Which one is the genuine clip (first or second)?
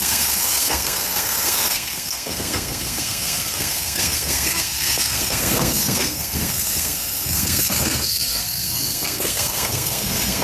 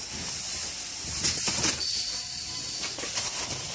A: second